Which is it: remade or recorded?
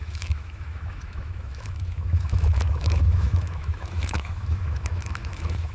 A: remade